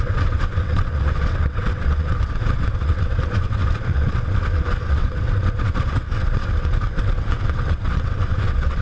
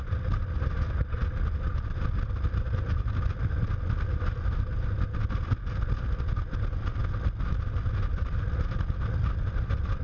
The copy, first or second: first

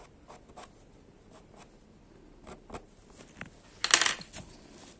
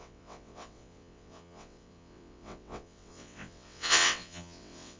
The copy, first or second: second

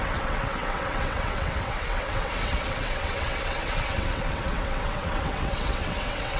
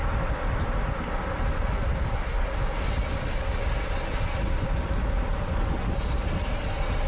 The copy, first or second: first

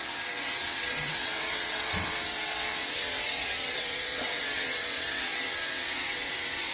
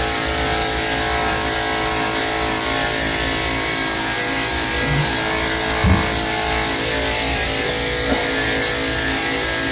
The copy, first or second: first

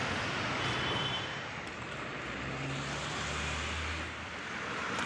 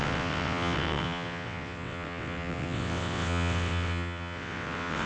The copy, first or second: second